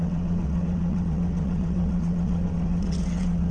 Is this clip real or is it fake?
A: fake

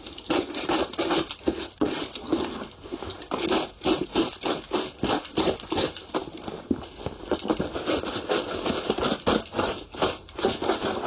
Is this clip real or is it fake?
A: real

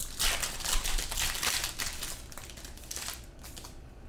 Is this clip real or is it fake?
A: real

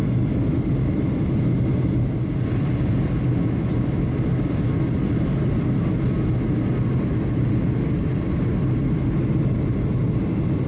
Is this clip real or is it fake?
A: real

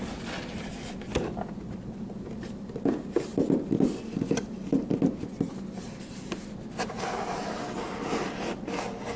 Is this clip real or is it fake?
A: real